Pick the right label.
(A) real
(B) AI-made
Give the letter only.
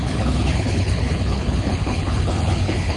B